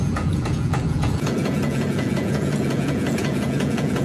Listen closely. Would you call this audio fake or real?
fake